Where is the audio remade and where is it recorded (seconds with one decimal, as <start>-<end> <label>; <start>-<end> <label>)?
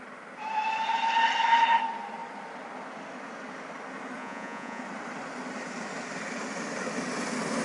0.0-4.2 recorded; 4.2-4.8 remade; 4.8-7.6 recorded